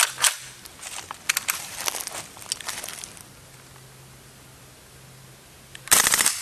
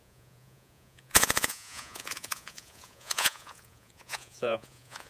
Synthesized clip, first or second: second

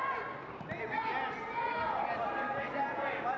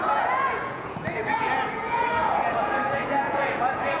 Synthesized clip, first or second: second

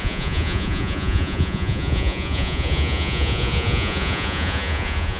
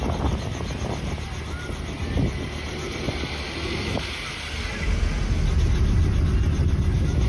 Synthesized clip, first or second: first